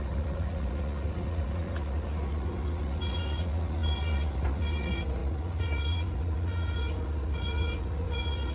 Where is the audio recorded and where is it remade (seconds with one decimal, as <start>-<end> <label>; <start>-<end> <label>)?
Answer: 0.0-8.5 remade